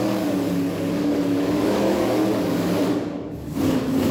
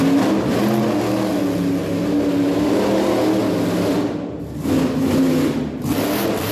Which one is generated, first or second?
first